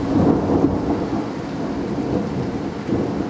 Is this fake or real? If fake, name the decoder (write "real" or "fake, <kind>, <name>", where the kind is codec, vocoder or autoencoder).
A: fake, vocoder, BigVGAN v2